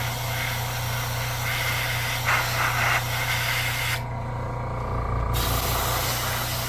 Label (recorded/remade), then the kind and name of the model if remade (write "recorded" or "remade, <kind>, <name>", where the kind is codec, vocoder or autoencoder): recorded